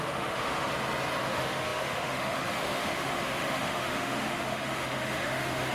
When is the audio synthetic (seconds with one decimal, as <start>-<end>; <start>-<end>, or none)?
0.0-0.7; 1.2-5.7